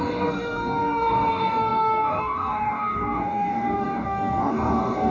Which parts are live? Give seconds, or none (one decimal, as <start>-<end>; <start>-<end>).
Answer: none